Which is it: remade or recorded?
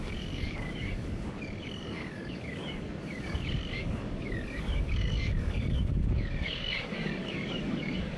remade